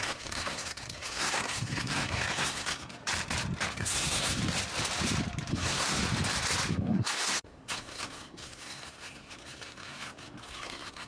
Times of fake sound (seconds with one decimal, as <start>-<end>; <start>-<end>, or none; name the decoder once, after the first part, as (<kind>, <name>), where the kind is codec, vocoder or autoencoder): 0.0-3.0 (codec, SNAC); 3.7-4.4; 5.5-6.0; 6.7-11.1